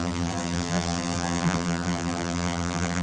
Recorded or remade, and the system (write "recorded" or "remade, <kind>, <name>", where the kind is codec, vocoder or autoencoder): remade, vocoder, BigVGAN v2